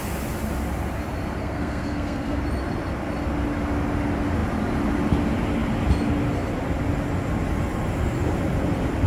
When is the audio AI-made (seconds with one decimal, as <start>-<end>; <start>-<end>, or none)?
1.4-2.4